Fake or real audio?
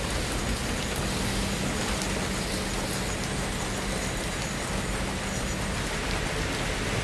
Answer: real